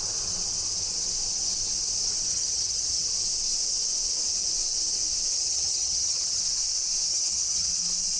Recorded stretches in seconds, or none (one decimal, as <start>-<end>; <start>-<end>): 0.0-2.3; 3.1-5.3; 6.4-7.1; 7.7-8.2

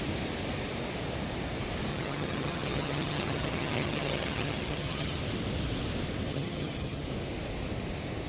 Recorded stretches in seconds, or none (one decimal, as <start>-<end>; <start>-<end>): 0.0-1.9; 5.2-6.3; 7.0-8.3

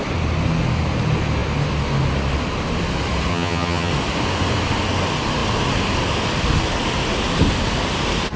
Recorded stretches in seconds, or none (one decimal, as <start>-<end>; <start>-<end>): 0.0-3.3; 3.9-8.4

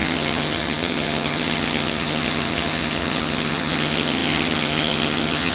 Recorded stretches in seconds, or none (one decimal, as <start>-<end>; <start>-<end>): none

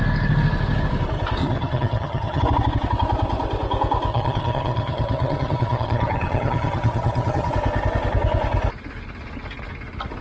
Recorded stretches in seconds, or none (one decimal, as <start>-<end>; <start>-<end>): 0.0-1.4; 2.4-4.1; 7.5-10.2

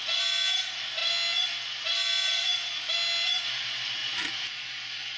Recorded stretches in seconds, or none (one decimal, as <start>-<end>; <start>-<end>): 0.0-5.2